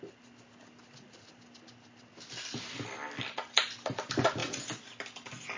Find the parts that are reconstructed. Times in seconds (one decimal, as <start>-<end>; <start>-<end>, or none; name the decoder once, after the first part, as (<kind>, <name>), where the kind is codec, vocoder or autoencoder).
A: none